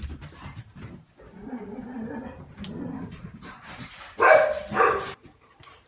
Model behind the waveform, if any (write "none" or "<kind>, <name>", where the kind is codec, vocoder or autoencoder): vocoder, BigVGAN v2